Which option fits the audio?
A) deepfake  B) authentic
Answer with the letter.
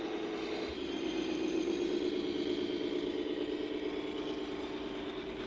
B